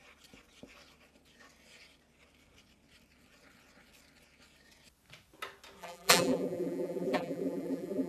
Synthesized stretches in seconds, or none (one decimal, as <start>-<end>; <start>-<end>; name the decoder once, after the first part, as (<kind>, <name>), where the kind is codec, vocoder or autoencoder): 5.8-8.1 (vocoder, BigVGAN v2)